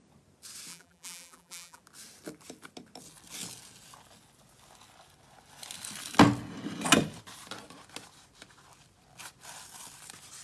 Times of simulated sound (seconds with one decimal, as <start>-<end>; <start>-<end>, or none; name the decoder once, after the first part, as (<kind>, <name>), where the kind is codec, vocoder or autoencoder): 0.7-1.8 (vocoder, BigVGAN v2)